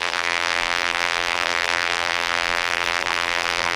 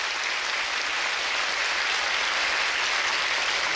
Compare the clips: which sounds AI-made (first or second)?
first